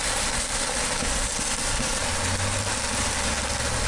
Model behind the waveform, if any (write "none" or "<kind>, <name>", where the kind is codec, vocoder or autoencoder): none